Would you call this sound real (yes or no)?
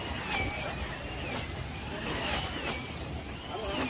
yes